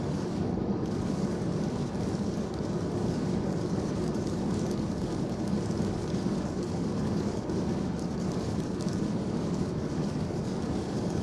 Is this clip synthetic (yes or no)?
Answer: yes